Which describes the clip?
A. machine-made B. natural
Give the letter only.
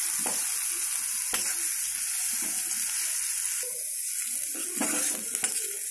B